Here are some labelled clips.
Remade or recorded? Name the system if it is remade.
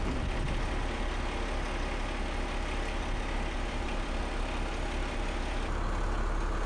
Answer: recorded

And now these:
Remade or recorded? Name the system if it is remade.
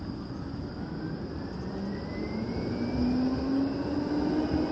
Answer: recorded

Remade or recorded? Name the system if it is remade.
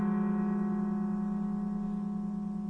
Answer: recorded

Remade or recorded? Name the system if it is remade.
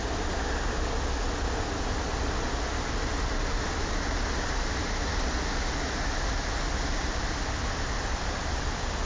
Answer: recorded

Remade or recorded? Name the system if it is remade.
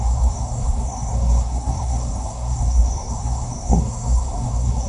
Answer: remade, codec, SNAC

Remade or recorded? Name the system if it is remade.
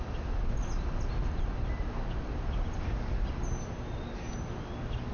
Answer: recorded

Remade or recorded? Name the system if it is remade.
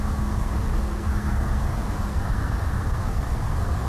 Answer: remade, codec, SNAC